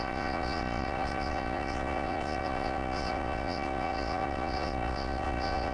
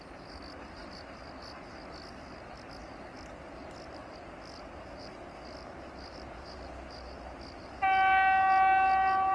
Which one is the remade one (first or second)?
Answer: first